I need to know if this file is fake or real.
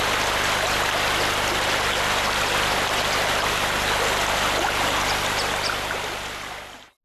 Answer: real